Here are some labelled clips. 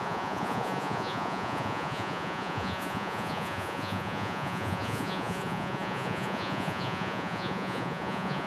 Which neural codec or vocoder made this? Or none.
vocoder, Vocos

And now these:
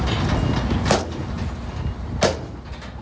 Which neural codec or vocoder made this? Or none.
none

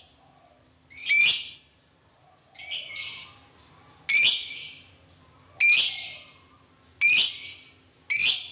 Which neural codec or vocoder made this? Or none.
none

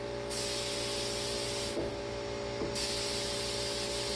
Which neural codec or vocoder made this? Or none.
none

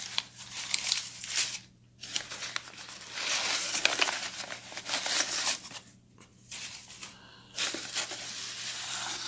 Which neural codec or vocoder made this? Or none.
none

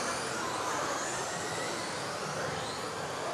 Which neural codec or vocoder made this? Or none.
none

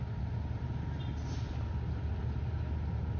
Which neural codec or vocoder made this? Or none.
none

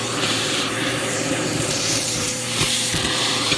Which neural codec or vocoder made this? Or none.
vocoder, BigVGAN v2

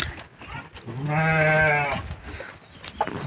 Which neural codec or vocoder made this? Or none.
none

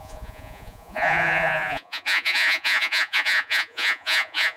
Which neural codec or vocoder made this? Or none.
vocoder, Vocos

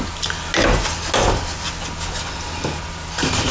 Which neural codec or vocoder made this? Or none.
none